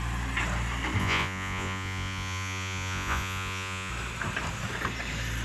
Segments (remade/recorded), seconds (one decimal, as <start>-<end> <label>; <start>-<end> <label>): 0.0-1.0 recorded; 1.0-3.9 remade; 3.9-5.4 recorded